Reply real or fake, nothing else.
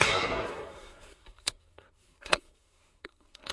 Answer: fake